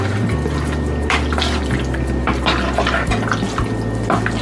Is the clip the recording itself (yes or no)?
yes